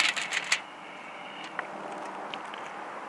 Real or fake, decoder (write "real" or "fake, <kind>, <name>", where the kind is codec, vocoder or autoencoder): real